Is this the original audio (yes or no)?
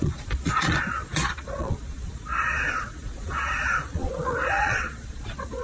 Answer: no